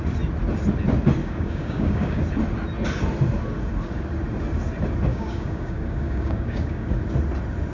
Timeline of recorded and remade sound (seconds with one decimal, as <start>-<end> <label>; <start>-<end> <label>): 0.0-1.2 recorded; 1.2-2.2 remade; 2.2-5.1 recorded; 5.1-6.9 remade; 6.9-7.7 recorded